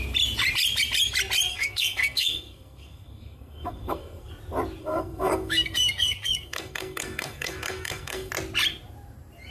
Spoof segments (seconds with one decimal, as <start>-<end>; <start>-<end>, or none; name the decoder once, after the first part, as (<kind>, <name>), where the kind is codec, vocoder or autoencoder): 1.5-4.3 (codec, SNAC); 4.8-8.3